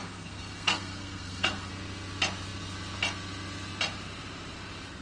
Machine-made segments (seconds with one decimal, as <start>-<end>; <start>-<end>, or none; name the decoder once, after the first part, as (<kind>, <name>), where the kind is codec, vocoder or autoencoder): 0.0-1.7 (codec, SNAC)